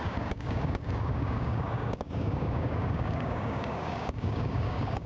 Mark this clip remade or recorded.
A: remade